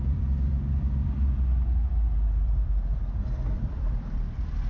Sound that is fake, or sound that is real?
fake